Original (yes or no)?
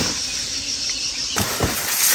yes